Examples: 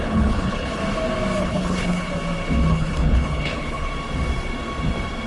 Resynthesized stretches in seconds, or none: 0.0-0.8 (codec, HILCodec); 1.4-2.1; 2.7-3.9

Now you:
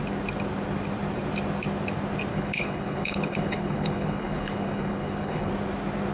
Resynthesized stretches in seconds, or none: 2.3-5.5 (codec, HILCodec)

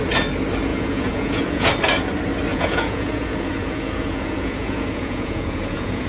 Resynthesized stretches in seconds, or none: 0.7-1.7 (vocoder, Vocos); 2.5-6.1

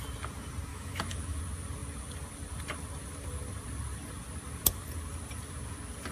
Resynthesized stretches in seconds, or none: 0.7-1.4 (autoencoder, DAC-VAE)

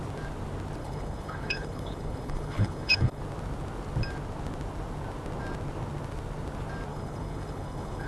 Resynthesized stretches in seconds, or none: 0.8-3.2 (codec, HILCodec); 6.9-8.1

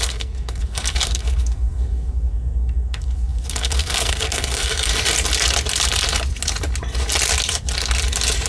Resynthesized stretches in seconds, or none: 0.0-4.9 (codec, SNAC)

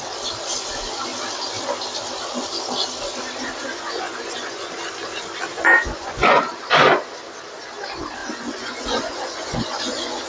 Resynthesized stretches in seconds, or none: 3.6-4.7 (vocoder, Vocos); 5.5-6.4; 8.2-10.3

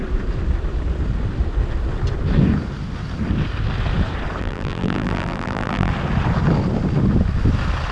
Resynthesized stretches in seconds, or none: 4.4-5.9 (vocoder, BigVGAN v2)